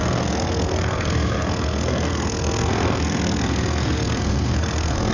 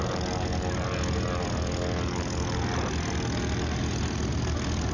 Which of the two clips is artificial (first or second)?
first